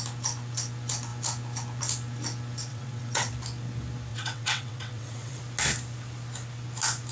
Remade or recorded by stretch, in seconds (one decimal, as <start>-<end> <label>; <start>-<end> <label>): 0.0-2.7 recorded; 2.7-3.3 remade; 3.3-4.1 recorded; 4.1-5.4 remade; 5.4-7.1 recorded